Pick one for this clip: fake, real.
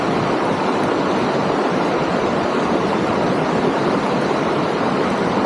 real